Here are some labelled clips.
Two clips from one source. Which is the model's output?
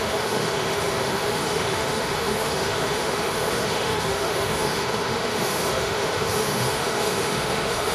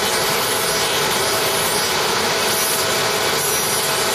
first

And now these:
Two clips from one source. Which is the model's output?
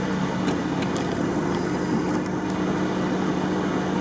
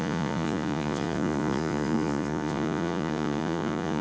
second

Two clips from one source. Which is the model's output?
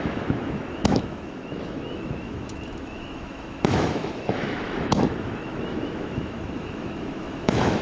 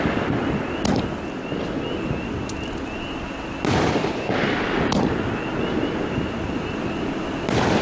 first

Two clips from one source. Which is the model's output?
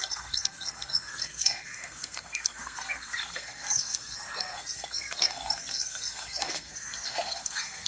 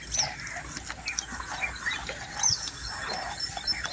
first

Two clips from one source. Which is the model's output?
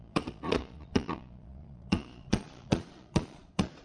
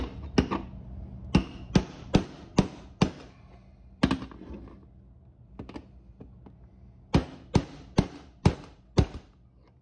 first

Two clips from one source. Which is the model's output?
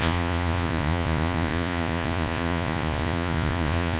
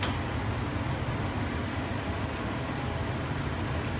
first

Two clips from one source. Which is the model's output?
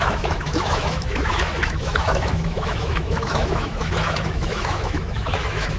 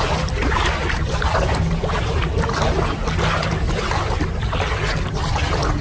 first